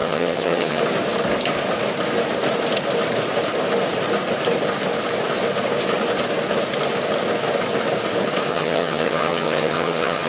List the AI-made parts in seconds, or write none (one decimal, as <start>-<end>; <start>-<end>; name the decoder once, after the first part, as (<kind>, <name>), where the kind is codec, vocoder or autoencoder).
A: 0.0-0.8 (vocoder, HiFi-GAN); 8.5-10.3